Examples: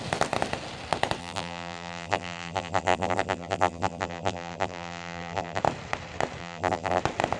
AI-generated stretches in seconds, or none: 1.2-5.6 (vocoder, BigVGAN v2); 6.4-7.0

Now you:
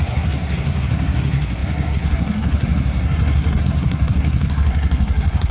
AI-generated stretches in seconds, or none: 0.0-5.5 (codec, SNAC)

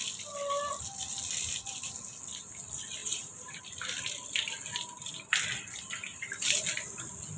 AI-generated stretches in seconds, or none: 3.0-3.6 (vocoder, BigVGAN v2)

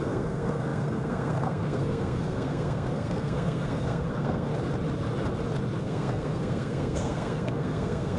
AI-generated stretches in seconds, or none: 0.0-4.5 (codec, SNAC); 5.8-8.2

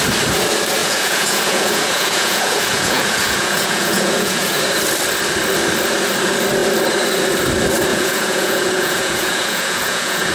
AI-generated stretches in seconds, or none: 0.8-4.6 (vocoder, Vocos); 7.9-10.3

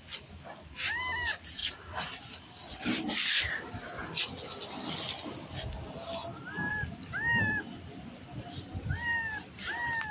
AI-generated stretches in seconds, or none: none

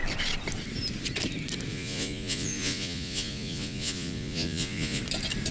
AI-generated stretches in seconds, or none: 1.7-5.0 (vocoder, Vocos)